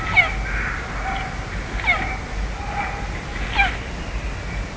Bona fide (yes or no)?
yes